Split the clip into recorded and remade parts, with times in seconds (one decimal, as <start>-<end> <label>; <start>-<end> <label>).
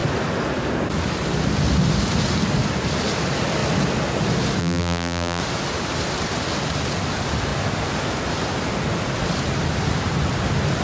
0.0-4.6 recorded; 4.6-5.4 remade; 5.4-10.8 recorded